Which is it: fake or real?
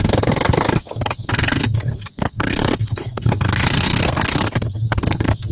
fake